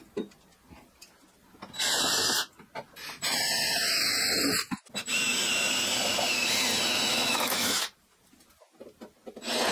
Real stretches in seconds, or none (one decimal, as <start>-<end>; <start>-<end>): 0.0-7.1; 7.7-9.7